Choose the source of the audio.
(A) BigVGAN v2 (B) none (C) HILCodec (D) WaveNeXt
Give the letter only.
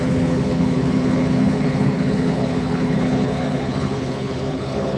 C